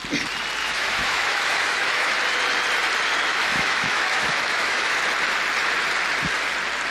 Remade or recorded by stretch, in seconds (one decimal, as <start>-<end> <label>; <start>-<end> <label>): 0.0-0.6 recorded; 0.6-2.1 remade; 2.1-3.3 recorded; 3.3-5.0 remade; 5.0-6.9 recorded